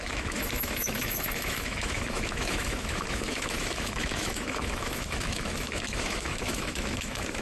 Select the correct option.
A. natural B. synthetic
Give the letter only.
B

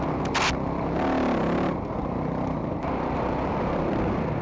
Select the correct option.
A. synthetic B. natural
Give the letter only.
B